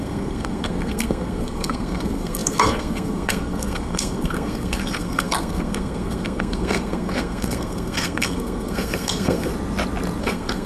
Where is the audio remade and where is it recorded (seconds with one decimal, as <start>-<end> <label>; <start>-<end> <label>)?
0.0-9.5 remade; 9.5-10.2 recorded; 10.2-10.7 remade

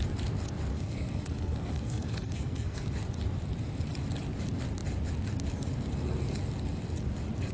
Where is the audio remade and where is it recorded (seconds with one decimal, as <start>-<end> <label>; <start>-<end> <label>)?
0.0-0.7 recorded; 0.7-2.9 remade; 2.9-7.5 recorded

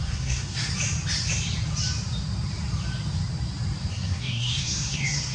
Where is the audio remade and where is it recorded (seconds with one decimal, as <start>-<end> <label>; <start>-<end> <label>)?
0.0-0.7 remade; 0.7-3.9 recorded; 3.9-5.3 remade